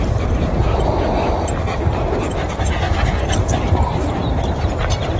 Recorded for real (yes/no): no